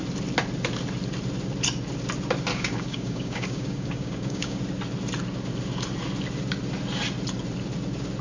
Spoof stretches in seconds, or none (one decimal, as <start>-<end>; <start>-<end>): 2.5-4.6